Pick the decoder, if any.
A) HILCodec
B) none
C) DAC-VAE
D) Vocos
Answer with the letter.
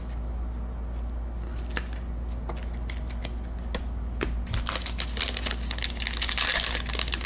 B